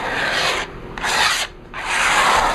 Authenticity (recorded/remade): recorded